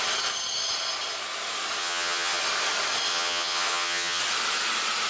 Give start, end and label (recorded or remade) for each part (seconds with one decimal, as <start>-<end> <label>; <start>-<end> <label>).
0.0-1.8 recorded; 1.8-2.4 remade; 2.4-3.1 recorded; 3.1-4.2 remade; 4.2-5.1 recorded